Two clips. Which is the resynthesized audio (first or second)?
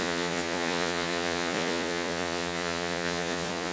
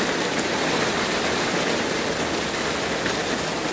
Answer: first